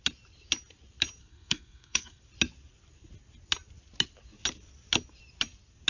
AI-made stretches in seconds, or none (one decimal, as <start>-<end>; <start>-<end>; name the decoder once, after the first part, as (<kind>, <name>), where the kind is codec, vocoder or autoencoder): 1.2-2.2 (codec, SNAC)